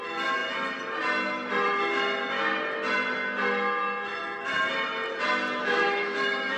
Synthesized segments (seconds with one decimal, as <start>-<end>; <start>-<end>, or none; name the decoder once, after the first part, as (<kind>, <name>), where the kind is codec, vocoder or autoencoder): 5.6-6.6 (autoencoder, DAC-VAE)